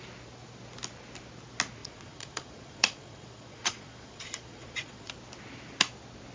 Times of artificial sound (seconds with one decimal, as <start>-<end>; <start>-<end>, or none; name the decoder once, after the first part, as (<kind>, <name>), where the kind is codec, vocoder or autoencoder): 1.8-5.1 (vocoder, Vocos)